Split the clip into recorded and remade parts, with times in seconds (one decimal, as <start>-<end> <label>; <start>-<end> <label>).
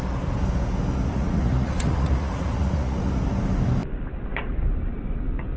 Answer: 0.0-1.1 recorded; 1.1-3.1 remade; 3.1-5.6 recorded